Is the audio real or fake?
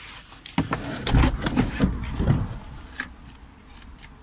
real